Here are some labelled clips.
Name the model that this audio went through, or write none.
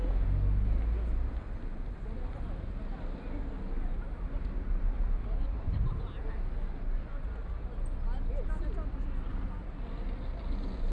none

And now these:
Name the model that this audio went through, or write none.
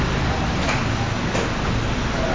none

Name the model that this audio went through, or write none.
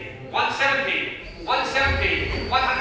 none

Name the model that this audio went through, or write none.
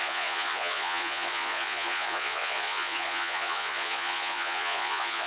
vocoder, Vocos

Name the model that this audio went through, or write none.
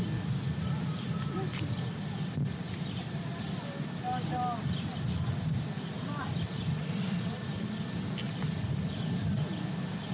none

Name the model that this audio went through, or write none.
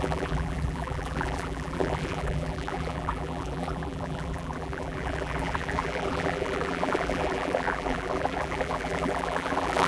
vocoder, BigVGAN v2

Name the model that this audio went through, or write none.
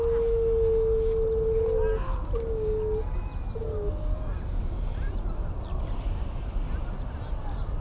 none